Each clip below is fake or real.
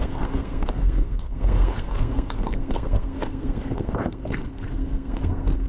fake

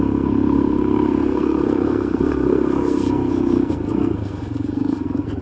fake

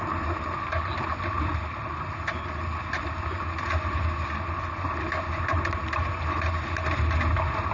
real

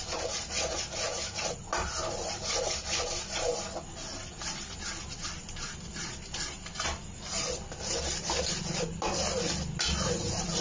real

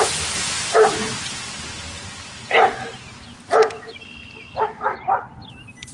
real